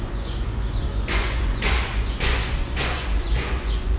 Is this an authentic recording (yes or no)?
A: no